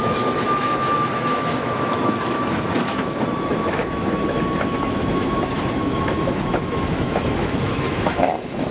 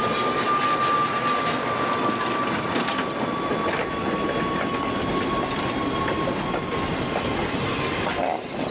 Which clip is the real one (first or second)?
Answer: second